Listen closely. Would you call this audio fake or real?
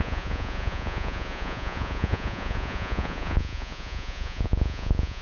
fake